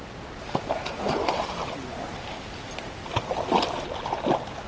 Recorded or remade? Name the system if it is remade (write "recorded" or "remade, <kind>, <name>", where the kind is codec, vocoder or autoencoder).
recorded